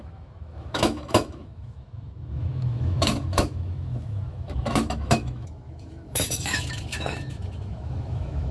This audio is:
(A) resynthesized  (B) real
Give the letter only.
A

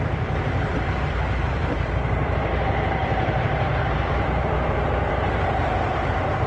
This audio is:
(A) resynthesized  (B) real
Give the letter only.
A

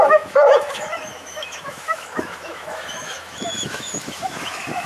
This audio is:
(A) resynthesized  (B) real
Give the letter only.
A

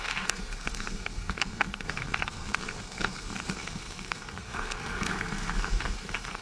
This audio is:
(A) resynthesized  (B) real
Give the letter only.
A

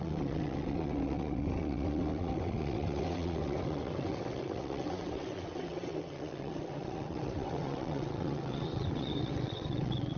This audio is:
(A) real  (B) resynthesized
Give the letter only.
B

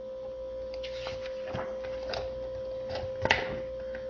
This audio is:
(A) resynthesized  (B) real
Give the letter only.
B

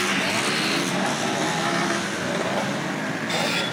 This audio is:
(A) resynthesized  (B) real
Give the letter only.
B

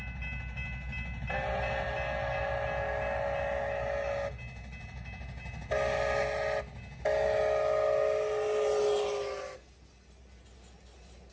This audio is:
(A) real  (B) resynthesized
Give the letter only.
A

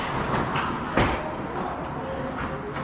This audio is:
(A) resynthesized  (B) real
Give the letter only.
B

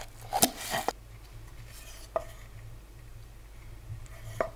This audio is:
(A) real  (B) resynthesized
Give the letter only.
A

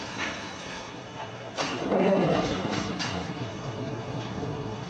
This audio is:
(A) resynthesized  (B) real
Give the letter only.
A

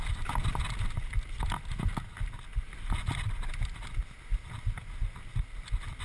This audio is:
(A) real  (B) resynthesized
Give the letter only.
A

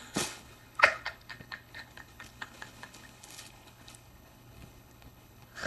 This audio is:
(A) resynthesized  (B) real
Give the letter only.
A